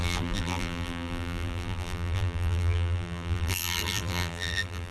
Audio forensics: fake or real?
fake